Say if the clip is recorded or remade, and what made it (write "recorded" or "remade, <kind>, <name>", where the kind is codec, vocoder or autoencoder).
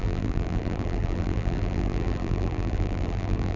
remade, vocoder, BigVGAN v2